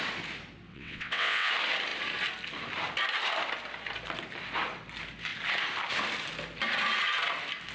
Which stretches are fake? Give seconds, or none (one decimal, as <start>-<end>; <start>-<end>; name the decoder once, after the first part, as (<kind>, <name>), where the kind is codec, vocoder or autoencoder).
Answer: 0.7-1.5 (vocoder, WaveNeXt)